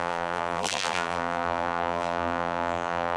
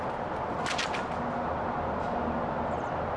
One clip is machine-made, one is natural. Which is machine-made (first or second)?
first